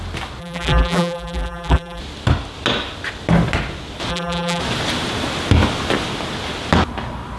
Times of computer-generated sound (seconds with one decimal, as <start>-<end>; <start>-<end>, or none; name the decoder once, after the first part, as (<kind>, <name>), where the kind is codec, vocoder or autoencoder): 0.4-2.0 (vocoder, BigVGAN v2); 4.1-4.6